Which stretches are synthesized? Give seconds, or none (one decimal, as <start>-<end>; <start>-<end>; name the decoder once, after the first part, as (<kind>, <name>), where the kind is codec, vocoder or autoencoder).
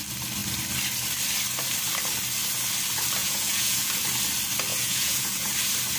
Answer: 3.2-3.9 (vocoder, Vocos); 4.7-5.5